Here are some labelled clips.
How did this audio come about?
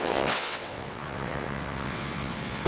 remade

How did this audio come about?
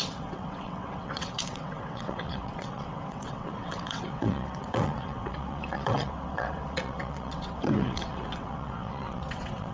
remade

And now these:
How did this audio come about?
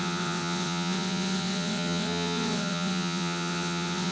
remade